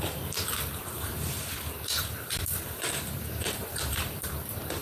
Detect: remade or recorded remade